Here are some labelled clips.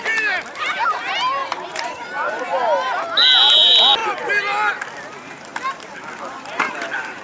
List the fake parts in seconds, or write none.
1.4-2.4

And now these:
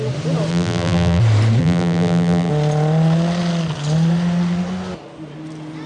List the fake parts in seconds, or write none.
0.5-1.2; 1.6-2.5

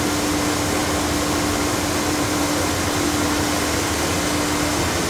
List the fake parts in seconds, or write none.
2.1-2.7

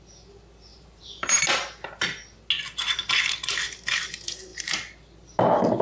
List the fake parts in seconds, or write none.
0.7-1.4

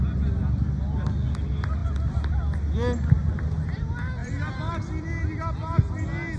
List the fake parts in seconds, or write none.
4.2-4.7

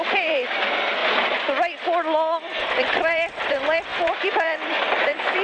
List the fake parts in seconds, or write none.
0.0-1.0; 2.6-5.4